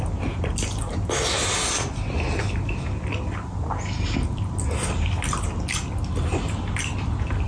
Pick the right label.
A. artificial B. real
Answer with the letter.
B